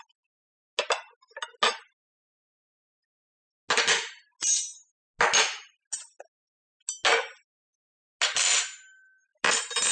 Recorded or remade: recorded